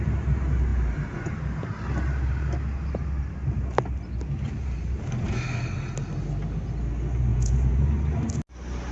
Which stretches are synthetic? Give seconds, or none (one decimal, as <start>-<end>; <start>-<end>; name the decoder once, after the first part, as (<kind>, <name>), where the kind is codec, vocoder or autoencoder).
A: 7.3-7.9 (vocoder, Vocos)